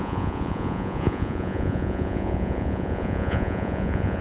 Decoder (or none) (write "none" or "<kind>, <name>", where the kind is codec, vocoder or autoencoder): vocoder, Vocos